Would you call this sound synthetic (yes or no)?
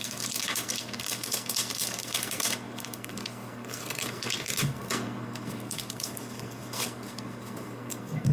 yes